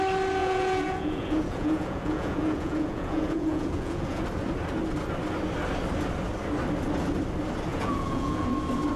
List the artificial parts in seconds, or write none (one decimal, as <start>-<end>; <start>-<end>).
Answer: 0.4-4.2; 7.7-8.5